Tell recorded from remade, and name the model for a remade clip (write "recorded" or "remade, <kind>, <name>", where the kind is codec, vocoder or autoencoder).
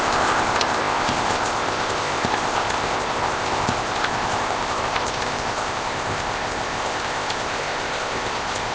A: remade, codec, ZipCodec